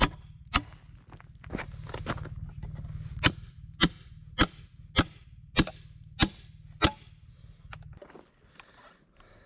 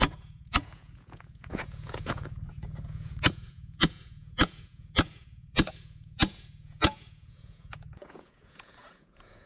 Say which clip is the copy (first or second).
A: second